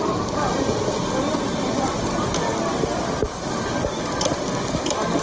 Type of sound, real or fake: fake